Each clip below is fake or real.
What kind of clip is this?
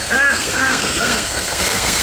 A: fake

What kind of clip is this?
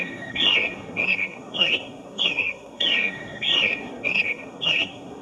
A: fake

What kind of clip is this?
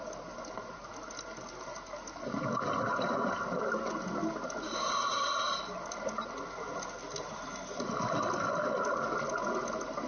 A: real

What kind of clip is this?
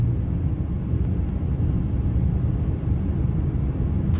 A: real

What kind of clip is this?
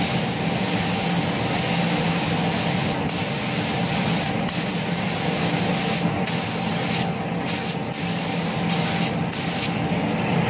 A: real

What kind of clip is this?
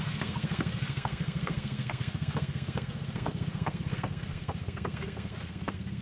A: fake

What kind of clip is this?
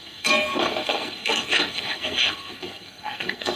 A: fake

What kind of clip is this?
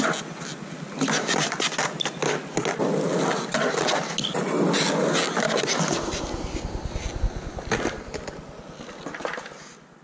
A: real